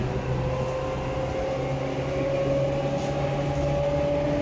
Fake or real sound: real